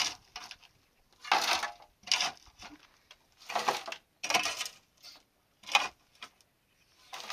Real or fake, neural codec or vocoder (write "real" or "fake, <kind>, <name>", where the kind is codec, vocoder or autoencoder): real